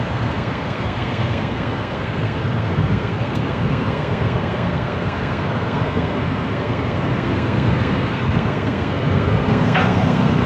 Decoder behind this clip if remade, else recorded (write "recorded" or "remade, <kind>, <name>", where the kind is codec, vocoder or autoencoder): remade, codec, SNAC